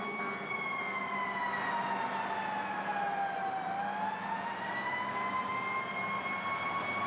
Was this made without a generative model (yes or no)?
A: yes